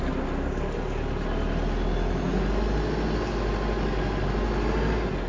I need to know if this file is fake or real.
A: real